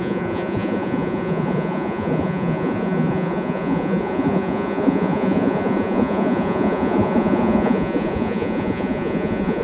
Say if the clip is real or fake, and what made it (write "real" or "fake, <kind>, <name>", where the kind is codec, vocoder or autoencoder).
fake, vocoder, Vocos